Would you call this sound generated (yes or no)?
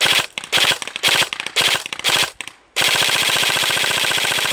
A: no